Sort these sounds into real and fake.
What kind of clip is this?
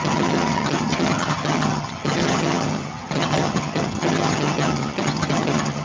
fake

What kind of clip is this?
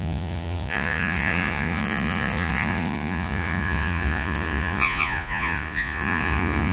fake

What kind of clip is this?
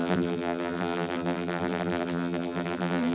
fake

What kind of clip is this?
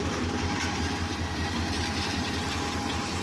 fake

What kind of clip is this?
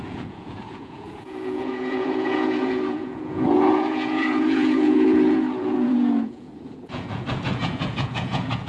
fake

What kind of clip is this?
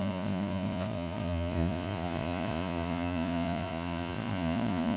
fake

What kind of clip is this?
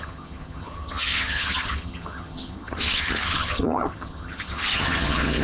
fake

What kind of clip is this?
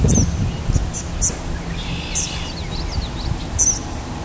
real